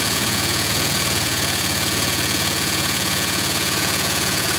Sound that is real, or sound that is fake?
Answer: fake